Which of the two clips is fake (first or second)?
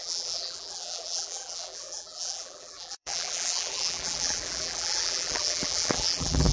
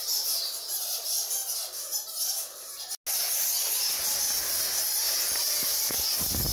first